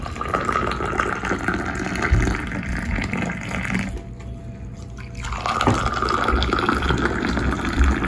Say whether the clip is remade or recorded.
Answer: recorded